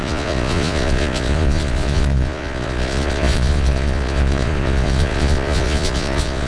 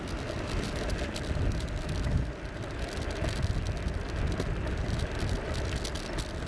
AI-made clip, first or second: first